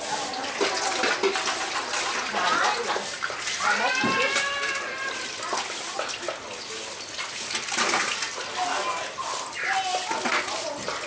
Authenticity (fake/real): real